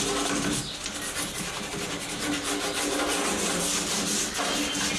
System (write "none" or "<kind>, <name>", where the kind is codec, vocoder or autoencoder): none